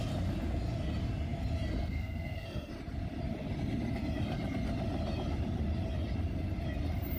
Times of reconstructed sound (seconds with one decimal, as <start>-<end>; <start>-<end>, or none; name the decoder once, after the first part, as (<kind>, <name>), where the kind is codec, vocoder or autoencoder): 1.8-2.7 (codec, SNAC)